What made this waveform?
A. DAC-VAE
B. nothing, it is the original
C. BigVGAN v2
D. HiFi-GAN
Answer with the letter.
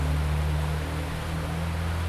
B